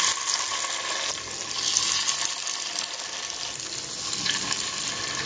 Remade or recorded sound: recorded